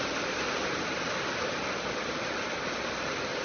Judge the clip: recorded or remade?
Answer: recorded